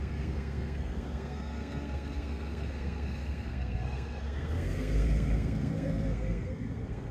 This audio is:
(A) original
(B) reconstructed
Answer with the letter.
B